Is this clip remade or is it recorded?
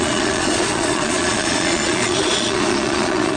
remade